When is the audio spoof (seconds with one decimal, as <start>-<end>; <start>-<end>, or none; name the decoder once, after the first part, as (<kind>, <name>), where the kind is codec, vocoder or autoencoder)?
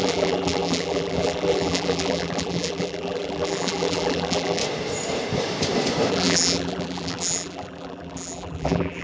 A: 0.0-4.6 (vocoder, BigVGAN v2); 6.1-9.0